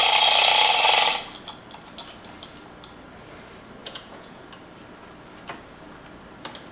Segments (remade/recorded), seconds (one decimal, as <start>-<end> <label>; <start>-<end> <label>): 0.0-3.8 recorded; 3.8-4.4 remade; 4.4-6.7 recorded